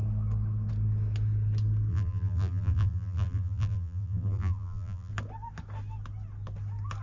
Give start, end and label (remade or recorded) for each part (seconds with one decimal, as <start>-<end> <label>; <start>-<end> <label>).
0.0-1.9 recorded; 1.9-5.1 remade; 5.1-7.0 recorded